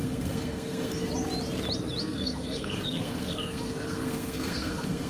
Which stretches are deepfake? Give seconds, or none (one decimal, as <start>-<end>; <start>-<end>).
0.0-1.1; 2.0-5.1